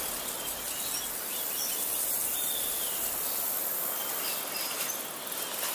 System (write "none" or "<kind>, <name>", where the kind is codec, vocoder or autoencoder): none